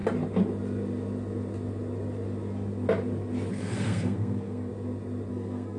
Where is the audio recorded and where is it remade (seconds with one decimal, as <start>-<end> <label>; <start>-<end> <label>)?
0.0-3.5 recorded; 3.5-4.7 remade; 4.7-5.3 recorded; 5.3-5.8 remade